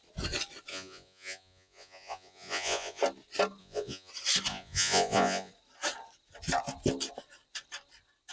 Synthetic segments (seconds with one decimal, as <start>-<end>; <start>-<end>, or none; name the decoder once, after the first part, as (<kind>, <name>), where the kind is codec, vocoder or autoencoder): 0.7-3.0 (vocoder, Vocos); 3.6-4.1; 4.5-5.5